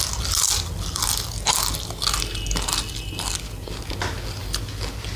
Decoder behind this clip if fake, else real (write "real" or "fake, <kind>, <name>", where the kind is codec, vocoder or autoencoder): real